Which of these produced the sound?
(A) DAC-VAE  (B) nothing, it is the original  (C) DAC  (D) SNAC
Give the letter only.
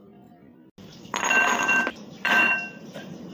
B